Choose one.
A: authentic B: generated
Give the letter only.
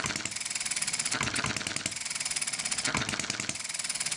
A